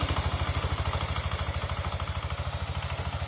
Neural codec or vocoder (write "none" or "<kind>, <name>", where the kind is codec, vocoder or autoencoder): none